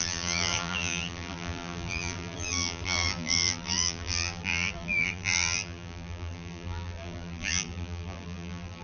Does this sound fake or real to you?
fake